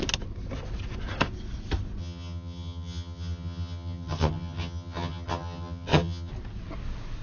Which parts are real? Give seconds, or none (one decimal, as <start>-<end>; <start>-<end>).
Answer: 0.0-2.0; 6.3-7.2

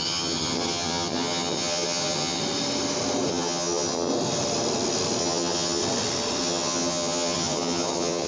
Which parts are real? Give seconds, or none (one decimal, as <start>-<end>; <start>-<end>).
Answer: 2.4-3.3; 4.1-5.2; 5.8-6.4

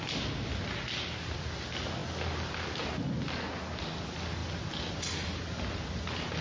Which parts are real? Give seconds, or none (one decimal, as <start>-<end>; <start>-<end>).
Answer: 0.0-6.4

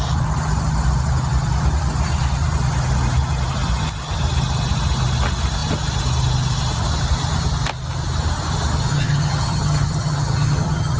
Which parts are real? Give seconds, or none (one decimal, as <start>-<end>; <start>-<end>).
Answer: 0.0-8.9

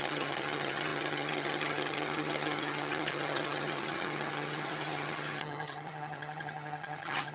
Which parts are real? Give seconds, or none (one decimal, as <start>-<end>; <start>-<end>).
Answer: none

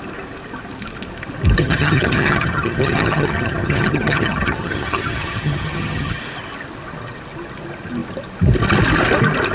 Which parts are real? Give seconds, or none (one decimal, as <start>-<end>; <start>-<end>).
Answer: 0.0-1.6; 6.2-9.5

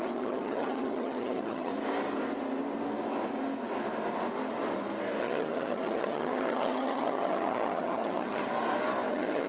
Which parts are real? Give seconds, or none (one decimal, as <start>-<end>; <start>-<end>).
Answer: 1.7-5.2; 8.4-9.1